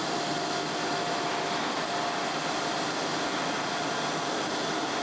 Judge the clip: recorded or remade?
recorded